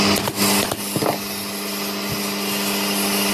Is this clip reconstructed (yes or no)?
no